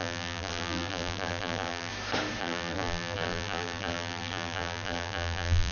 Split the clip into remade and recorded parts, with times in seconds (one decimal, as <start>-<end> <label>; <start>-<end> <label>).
0.0-1.9 remade; 1.9-2.4 recorded; 2.4-5.7 remade